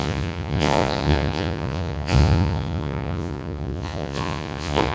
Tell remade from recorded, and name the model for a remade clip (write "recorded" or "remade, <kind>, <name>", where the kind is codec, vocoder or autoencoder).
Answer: remade, vocoder, Vocos